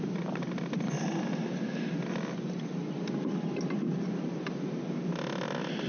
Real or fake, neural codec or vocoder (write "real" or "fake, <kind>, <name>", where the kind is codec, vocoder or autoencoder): real